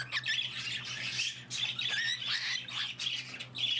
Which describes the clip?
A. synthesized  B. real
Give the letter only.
B